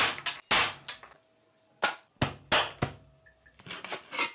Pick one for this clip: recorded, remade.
recorded